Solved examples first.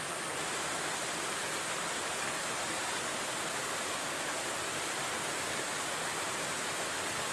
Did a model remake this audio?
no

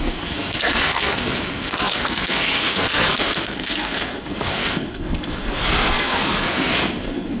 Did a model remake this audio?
yes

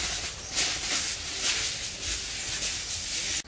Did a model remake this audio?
no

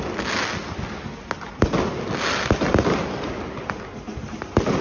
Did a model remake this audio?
no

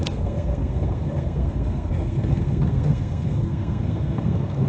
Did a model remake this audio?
yes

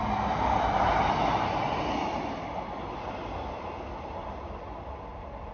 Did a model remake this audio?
no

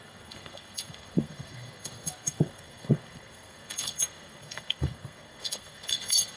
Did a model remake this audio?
yes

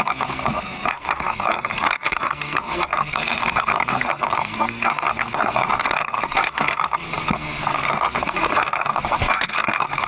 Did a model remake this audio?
yes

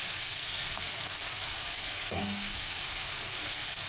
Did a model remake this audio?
yes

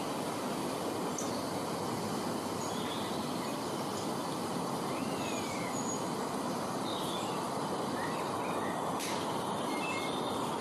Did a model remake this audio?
no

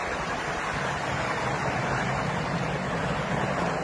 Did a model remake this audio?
no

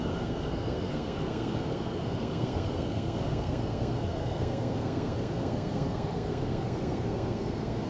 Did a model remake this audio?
yes